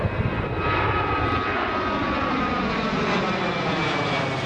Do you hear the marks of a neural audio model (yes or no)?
no